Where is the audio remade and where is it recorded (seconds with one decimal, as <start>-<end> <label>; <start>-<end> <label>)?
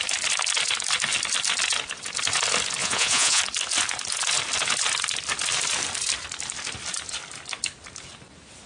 0.0-2.8 recorded; 2.8-3.4 remade; 3.4-8.7 recorded